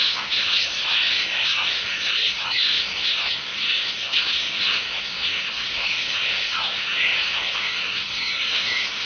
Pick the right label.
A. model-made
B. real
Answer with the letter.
A